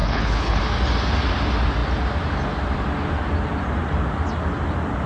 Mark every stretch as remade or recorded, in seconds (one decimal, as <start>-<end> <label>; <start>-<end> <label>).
0.0-0.6 remade; 0.6-5.1 recorded